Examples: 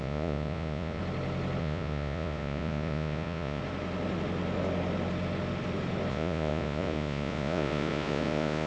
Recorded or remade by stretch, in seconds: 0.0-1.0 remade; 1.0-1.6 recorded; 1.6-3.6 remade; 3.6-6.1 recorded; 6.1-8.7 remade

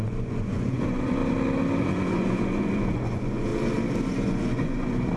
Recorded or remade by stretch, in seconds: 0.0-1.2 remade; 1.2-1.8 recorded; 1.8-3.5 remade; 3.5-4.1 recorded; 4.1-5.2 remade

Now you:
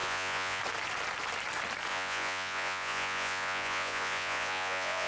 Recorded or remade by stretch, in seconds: 0.0-0.6 remade; 0.6-1.9 recorded; 1.9-5.1 remade

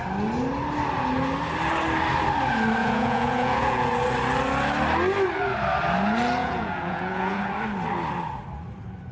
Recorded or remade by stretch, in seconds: 0.0-2.8 recorded; 2.8-3.9 remade; 3.9-6.4 recorded; 6.4-7.4 remade; 7.4-9.1 recorded

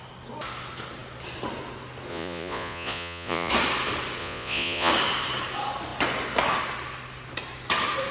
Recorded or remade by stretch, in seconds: 0.0-2.1 recorded; 2.1-3.5 remade; 3.5-4.2 recorded; 4.2-4.9 remade; 4.9-8.1 recorded

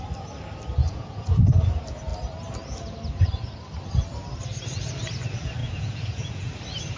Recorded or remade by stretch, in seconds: 0.0-0.8 recorded; 0.8-1.4 remade; 1.4-5.6 recorded; 5.6-6.5 remade; 6.5-7.0 recorded

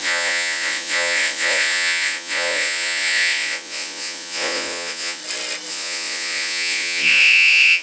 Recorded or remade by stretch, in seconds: 0.0-5.2 remade; 5.2-5.7 recorded; 5.7-7.8 remade

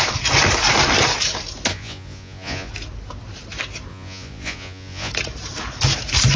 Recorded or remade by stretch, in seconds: 0.0-1.7 recorded; 1.7-2.7 remade; 2.7-3.9 recorded; 3.9-5.1 remade; 5.1-6.4 recorded